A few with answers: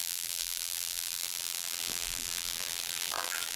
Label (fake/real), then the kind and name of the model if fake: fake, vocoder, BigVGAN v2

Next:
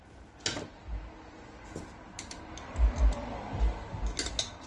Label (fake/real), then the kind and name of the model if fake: real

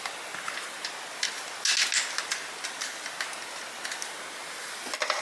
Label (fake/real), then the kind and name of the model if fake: real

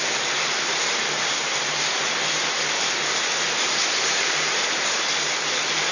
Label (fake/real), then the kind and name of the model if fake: real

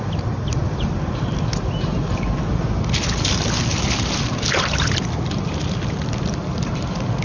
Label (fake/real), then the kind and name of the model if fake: fake, vocoder, BigVGAN v2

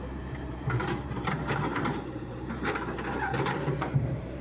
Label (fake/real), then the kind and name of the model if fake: fake, vocoder, BigVGAN v2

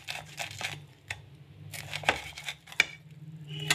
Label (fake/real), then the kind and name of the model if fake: real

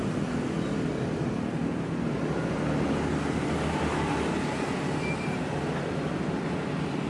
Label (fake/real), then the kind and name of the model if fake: real